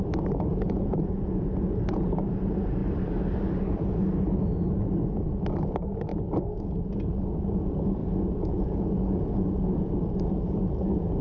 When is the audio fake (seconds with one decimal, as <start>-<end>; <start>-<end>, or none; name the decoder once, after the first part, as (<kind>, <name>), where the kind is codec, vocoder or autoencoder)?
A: 0.5-1.8 (vocoder, Vocos); 8.0-9.9